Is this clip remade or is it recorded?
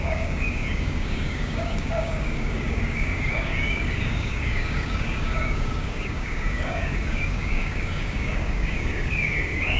remade